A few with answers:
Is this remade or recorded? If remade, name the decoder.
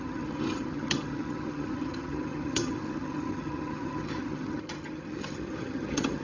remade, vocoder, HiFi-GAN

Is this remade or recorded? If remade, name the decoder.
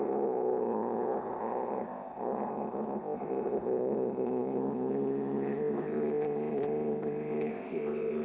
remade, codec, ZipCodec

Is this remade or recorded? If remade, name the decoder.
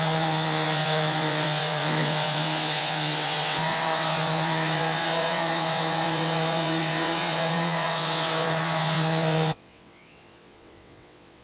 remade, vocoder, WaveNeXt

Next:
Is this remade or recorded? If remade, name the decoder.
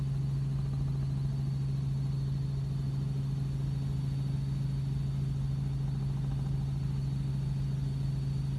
recorded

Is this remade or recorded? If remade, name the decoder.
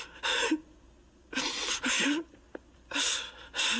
recorded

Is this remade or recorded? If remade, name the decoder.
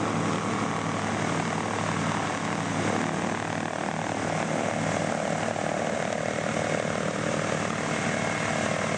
recorded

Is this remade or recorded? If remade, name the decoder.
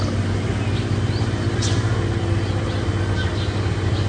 recorded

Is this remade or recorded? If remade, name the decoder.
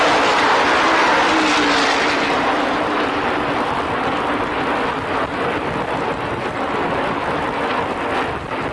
recorded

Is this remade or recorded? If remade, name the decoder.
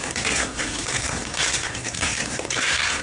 remade, codec, SNAC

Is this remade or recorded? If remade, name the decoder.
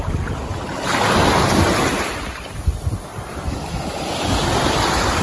recorded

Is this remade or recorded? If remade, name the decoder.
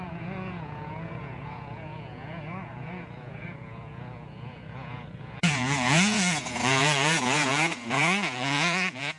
remade, vocoder, Vocos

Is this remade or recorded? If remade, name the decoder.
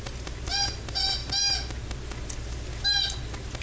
recorded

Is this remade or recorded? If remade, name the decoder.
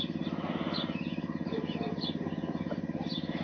recorded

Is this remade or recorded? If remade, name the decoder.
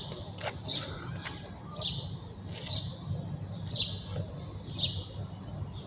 recorded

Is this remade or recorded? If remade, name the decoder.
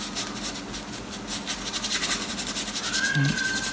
recorded